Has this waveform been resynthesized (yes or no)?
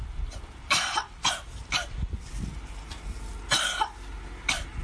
no